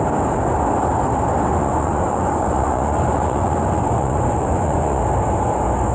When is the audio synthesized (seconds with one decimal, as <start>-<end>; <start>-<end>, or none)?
1.5-5.0